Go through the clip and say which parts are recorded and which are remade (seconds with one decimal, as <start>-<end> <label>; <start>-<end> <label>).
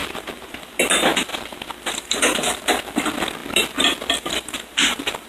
0.0-0.8 remade; 0.8-1.3 recorded; 1.3-2.6 remade; 2.6-5.3 recorded